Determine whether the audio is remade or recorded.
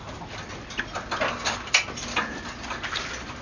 recorded